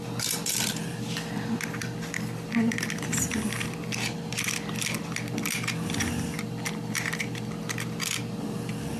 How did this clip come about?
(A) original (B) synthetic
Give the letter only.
A